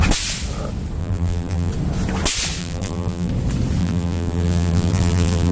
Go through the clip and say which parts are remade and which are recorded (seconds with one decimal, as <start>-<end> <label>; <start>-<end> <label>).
0.0-1.0 recorded; 1.0-1.7 remade; 1.7-2.6 recorded; 2.6-3.3 remade; 3.3-3.8 recorded; 3.8-5.5 remade